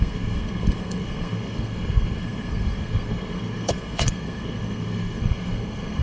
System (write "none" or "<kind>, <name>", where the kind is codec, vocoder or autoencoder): codec, SNAC